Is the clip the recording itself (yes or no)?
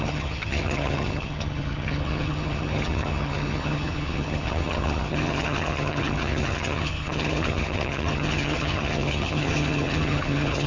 no